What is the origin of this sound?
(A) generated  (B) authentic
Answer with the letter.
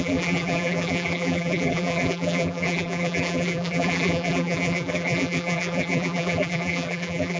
A